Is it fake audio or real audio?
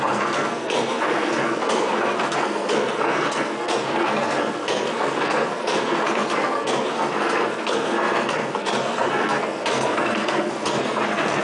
fake